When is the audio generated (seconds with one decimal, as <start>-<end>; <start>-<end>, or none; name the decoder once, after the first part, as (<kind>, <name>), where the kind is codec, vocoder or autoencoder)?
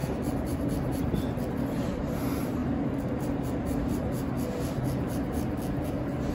none